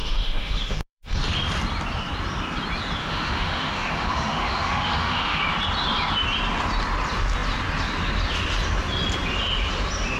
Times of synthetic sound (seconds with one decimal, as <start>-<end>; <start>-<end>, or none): 0.0-1.2; 3.0-5.4